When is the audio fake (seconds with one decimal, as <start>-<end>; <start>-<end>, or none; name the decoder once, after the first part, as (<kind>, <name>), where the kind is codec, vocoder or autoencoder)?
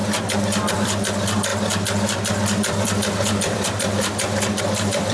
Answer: 0.7-5.1 (vocoder, BigVGAN v2)